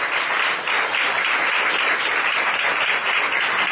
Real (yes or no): no